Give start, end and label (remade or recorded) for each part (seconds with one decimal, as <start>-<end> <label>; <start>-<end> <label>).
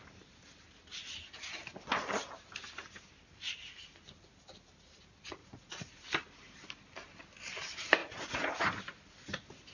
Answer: 0.0-5.4 recorded; 5.4-6.0 remade; 6.0-8.0 recorded; 8.0-8.7 remade; 8.7-9.7 recorded